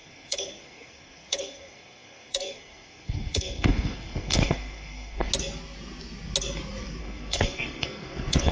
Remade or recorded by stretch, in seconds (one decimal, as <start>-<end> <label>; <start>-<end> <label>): 0.0-5.3 remade; 5.3-7.0 recorded; 7.0-8.5 remade